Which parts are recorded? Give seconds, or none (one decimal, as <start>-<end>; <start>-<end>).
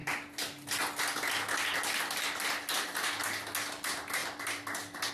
0.0-5.1